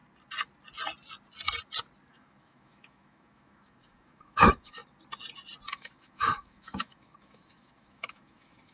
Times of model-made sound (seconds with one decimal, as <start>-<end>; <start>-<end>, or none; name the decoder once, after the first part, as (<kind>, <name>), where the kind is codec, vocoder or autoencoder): 2.1-4.8 (autoencoder, DAC-VAE); 5.7-8.7